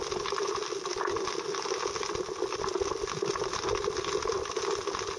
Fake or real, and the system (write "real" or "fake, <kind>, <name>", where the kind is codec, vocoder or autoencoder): real